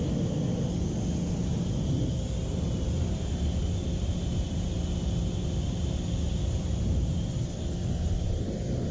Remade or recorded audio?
recorded